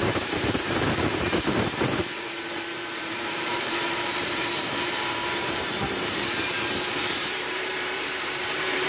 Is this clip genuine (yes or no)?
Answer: no